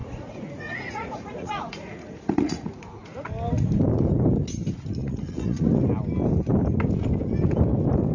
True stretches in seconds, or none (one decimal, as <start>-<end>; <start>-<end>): 3.3-5.0; 5.8-8.1